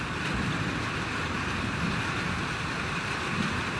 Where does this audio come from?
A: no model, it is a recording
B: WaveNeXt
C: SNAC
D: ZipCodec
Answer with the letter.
A